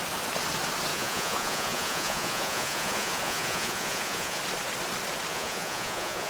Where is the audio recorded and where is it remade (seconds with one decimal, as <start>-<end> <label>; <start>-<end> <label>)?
0.0-0.9 recorded; 0.9-4.4 remade; 4.4-5.3 recorded; 5.3-6.3 remade